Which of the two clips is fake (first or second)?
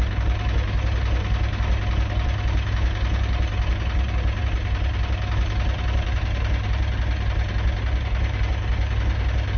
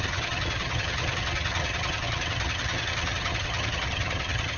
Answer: second